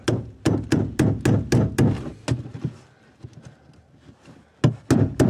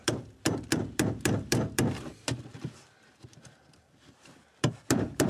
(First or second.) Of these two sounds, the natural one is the first